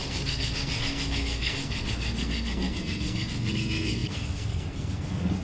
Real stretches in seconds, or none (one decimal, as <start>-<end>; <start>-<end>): none